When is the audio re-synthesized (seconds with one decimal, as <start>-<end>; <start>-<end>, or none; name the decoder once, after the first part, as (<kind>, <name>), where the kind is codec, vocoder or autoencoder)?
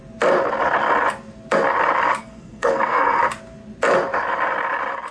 2.2-3.2 (codec, SNAC)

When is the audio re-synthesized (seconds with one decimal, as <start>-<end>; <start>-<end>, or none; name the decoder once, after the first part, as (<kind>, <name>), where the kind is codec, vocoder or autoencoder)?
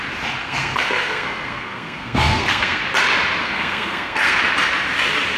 0.4-2.8 (codec, SNAC); 3.4-4.4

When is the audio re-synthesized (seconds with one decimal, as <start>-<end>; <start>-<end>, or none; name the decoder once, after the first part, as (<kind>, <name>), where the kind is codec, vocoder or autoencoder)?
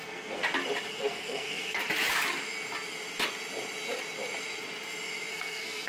0.0-0.4 (codec, SNAC); 0.9-1.8; 5.3-5.9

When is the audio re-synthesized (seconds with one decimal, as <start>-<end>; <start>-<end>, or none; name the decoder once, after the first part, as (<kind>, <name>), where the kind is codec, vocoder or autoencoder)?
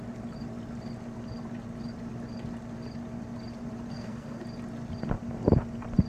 3.9-4.4 (codec, SNAC)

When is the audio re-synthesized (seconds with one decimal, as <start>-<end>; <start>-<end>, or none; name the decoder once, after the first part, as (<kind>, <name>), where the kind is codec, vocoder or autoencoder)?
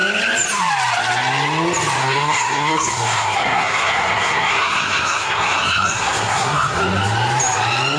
2.0-6.8 (codec, SNAC)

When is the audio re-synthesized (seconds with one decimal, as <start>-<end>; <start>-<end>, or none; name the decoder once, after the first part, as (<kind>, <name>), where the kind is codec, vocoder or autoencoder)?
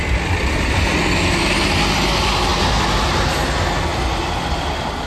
none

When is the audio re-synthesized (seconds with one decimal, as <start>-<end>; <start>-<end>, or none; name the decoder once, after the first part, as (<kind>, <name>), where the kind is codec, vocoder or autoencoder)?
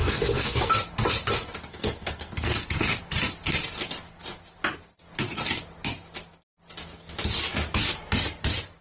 0.0-0.7 (codec, SNAC); 1.7-2.7